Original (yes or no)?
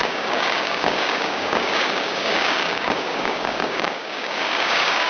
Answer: no